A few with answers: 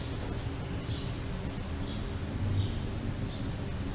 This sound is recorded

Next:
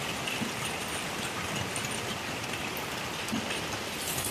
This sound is recorded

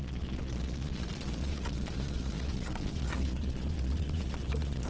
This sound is remade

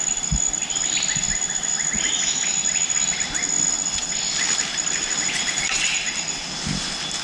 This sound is recorded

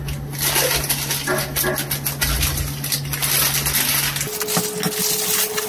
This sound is recorded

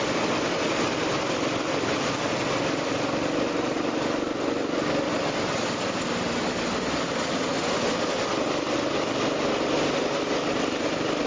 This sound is recorded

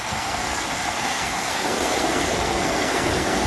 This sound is remade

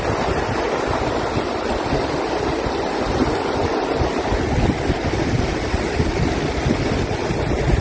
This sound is recorded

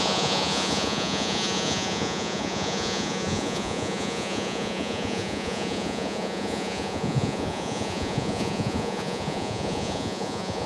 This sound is remade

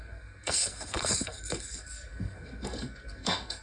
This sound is remade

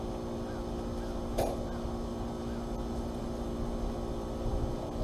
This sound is recorded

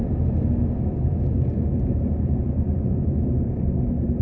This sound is remade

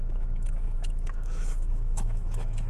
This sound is remade